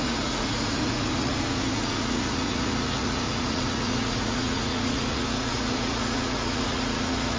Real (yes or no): no